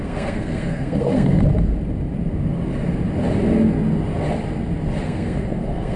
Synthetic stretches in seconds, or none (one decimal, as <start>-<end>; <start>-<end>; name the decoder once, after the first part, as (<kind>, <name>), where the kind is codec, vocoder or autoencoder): 0.0-1.4 (codec, SNAC); 5.0-6.0